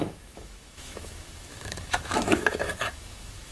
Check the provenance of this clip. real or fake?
fake